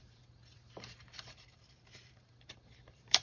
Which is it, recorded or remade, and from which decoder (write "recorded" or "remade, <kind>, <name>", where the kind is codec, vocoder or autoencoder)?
remade, vocoder, BigVGAN v2